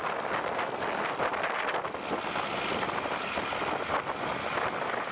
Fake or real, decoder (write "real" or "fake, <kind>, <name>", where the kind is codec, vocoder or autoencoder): real